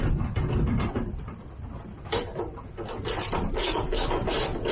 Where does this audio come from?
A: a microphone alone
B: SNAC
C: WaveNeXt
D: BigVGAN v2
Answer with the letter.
A